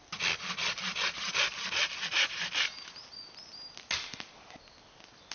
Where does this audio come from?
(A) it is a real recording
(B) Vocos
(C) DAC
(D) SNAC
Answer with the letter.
A